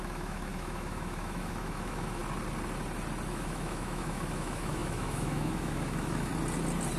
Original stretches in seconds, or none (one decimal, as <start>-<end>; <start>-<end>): 2.2-3.3; 6.3-7.0